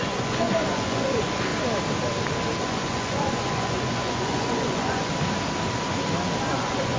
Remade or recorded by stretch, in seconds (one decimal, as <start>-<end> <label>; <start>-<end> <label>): 0.0-1.5 remade; 1.5-2.6 recorded; 2.6-5.1 remade; 5.1-6.5 recorded; 6.5-7.0 remade